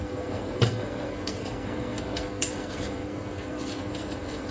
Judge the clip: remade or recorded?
remade